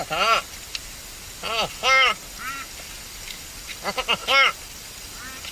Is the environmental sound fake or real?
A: real